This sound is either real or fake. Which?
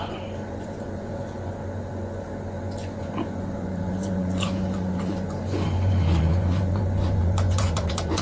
fake